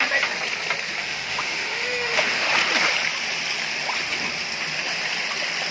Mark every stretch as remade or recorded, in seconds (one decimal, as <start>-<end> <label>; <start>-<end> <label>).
0.0-1.0 recorded; 1.0-2.5 remade; 2.5-5.7 recorded